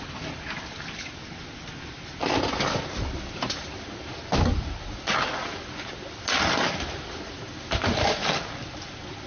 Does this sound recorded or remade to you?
recorded